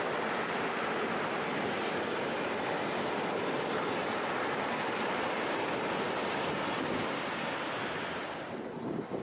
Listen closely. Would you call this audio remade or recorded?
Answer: recorded